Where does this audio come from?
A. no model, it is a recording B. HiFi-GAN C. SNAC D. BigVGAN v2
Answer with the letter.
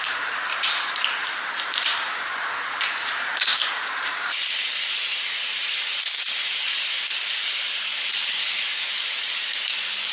D